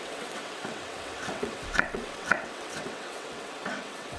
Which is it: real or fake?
fake